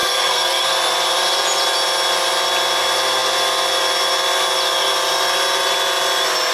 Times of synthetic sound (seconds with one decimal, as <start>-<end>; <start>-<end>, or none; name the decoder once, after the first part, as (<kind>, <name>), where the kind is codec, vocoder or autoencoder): 0.0-0.7 (codec, SNAC)